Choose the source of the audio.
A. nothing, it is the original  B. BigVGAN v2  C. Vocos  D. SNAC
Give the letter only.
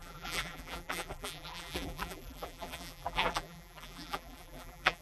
B